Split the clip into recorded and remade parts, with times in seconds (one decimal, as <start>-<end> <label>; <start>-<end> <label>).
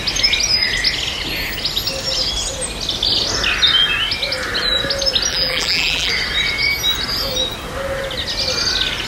0.0-5.3 recorded; 5.3-6.1 remade; 6.1-9.1 recorded